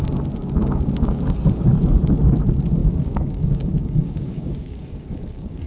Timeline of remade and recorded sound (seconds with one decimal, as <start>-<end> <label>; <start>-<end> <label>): 0.0-0.4 recorded; 0.4-1.2 remade; 1.2-2.8 recorded; 2.8-5.7 remade